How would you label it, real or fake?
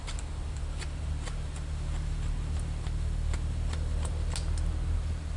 real